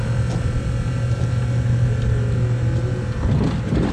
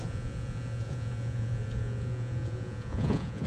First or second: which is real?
first